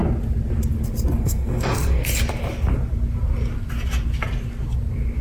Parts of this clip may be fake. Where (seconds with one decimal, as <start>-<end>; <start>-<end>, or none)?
1.2-2.0